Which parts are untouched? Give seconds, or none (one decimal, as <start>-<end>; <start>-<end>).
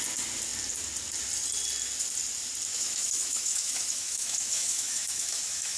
0.0-2.7